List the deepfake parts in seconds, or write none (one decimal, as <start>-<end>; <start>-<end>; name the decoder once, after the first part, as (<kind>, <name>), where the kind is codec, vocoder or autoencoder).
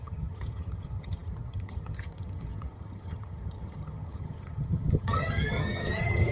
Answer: 0.0-6.3 (vocoder, HiFi-GAN)